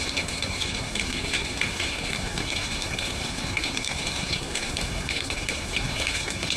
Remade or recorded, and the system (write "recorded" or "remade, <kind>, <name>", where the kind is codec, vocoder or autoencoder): remade, codec, SNAC